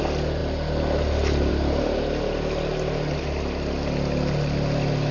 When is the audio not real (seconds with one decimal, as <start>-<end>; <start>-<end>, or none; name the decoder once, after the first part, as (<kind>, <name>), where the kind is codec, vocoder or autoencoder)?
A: none